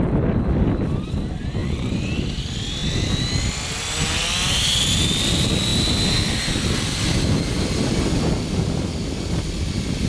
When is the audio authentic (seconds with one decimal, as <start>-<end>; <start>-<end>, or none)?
0.0-1.6; 2.1-10.1